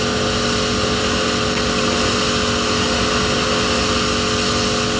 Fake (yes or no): no